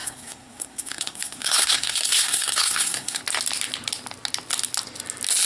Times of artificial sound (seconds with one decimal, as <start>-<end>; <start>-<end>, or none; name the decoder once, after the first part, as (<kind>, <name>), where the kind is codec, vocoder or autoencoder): 0.0-3.2 (codec, SNAC)